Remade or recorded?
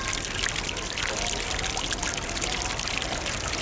recorded